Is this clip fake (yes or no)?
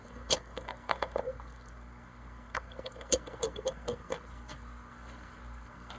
yes